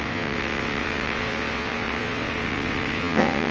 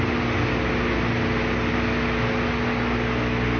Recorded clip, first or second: second